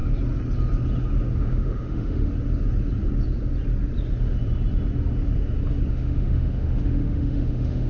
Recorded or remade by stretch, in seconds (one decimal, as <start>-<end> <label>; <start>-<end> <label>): 0.0-1.3 recorded; 1.3-2.3 remade; 2.3-5.9 recorded; 5.9-7.9 remade